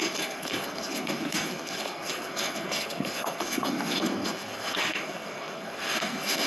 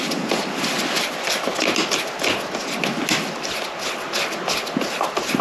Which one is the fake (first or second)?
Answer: first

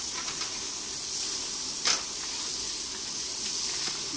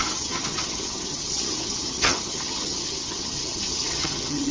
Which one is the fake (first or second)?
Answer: second